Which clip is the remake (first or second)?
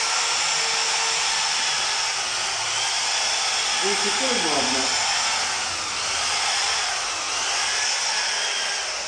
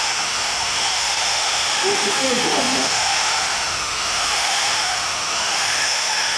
second